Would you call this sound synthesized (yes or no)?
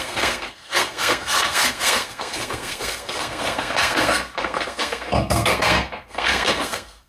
yes